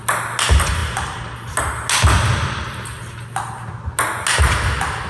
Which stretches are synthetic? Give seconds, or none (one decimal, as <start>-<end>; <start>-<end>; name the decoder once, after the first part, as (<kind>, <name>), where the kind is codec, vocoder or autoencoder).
none